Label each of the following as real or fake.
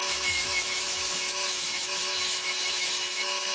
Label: fake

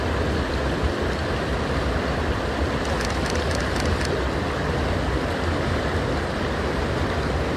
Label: real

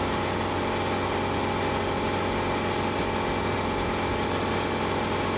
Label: real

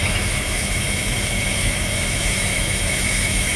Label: fake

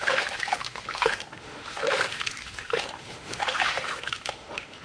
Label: fake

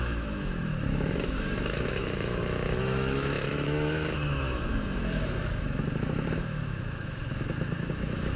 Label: fake